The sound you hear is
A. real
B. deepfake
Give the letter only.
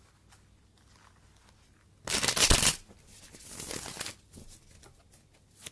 A